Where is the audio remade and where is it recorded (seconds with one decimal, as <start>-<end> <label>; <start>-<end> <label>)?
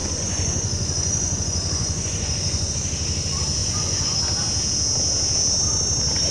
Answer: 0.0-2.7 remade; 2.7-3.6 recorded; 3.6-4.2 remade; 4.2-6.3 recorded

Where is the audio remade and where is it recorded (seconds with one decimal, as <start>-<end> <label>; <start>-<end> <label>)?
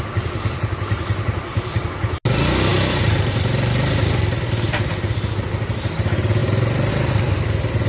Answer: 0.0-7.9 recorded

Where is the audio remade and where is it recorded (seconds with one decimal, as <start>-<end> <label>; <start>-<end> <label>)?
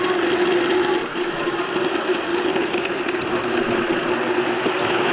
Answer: 0.0-1.0 recorded; 1.0-1.6 remade; 1.6-3.6 recorded; 3.6-4.1 remade; 4.1-5.1 recorded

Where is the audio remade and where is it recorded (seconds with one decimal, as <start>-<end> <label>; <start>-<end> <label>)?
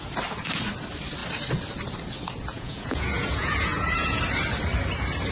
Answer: 0.0-2.5 recorded; 2.5-4.2 remade; 4.2-5.3 recorded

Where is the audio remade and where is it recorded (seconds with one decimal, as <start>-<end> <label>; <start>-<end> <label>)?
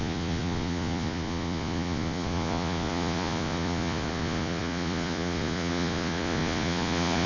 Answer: 0.0-7.3 remade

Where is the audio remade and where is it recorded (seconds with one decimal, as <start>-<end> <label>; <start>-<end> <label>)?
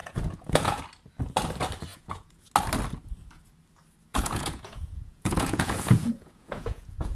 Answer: 0.0-0.8 remade; 0.8-1.9 recorded; 1.9-2.5 remade; 2.5-4.1 recorded; 4.1-7.2 remade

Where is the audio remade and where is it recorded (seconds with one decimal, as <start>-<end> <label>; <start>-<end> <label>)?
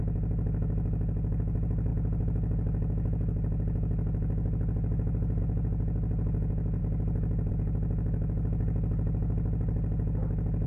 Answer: 0.0-10.7 recorded